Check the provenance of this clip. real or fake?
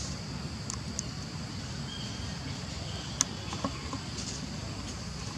real